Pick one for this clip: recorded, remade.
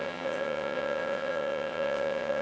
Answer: remade